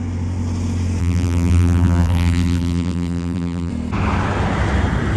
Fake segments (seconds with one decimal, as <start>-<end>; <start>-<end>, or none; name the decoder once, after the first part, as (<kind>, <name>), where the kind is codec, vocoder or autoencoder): 1.0-3.7 (vocoder, BigVGAN v2)